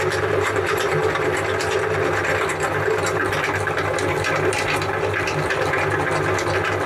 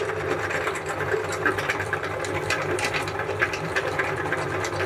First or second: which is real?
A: first